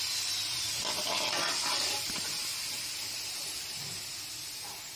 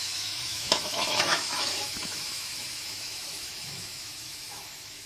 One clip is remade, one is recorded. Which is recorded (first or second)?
first